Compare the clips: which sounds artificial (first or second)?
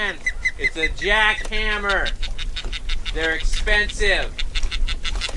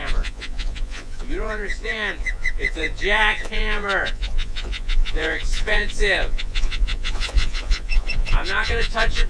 second